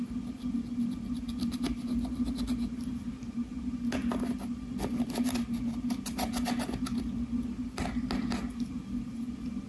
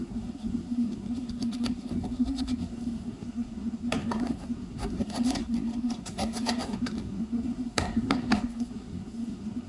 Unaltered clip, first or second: first